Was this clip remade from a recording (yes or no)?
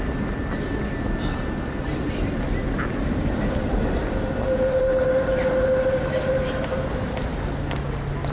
no